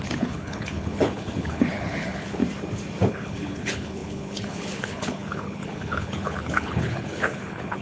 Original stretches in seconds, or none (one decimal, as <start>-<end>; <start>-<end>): 2.4-3.1